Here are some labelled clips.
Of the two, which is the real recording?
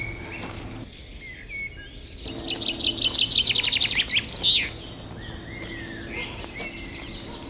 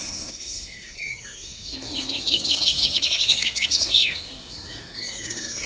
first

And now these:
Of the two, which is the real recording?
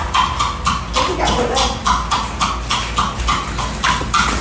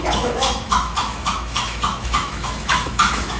first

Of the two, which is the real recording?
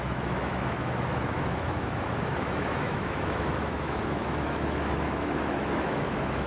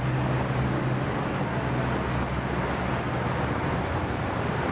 second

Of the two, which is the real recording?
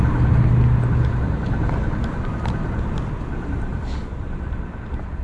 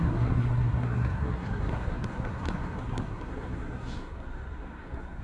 first